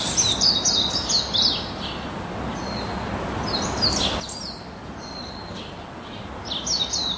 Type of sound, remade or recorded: recorded